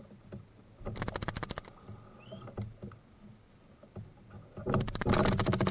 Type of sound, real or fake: real